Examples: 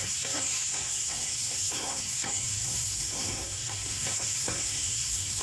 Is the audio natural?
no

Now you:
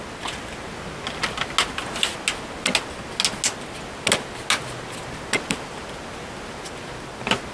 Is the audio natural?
yes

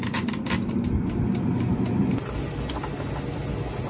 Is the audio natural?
yes